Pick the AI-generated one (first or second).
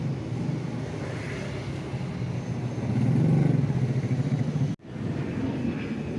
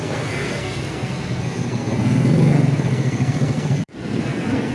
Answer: second